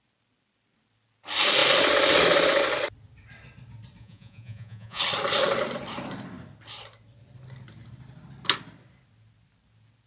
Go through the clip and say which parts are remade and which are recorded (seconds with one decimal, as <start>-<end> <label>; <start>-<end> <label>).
0.0-4.0 recorded; 4.0-5.0 remade; 5.0-10.1 recorded